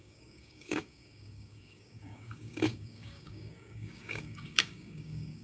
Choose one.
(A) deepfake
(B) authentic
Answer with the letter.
A